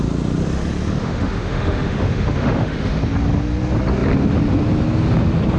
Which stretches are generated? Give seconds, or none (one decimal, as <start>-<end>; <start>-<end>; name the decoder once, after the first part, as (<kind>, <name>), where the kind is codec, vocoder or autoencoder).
1.0-3.0 (autoencoder, DAC-VAE)